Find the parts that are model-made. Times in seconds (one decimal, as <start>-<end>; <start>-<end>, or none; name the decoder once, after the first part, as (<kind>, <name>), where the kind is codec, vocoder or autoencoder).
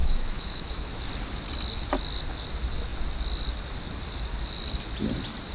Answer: 0.0-0.9 (autoencoder, DAC-VAE)